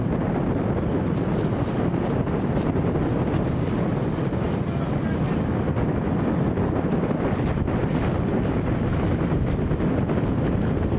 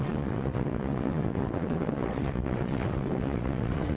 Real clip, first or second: first